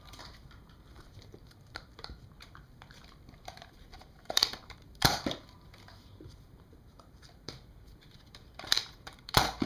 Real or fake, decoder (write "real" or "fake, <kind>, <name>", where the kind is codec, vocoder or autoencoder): fake, vocoder, BigVGAN v2